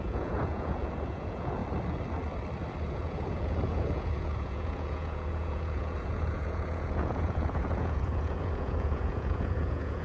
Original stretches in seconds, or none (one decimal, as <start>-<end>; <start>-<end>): 1.6-2.9